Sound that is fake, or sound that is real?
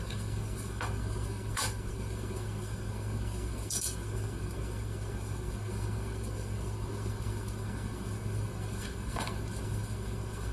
fake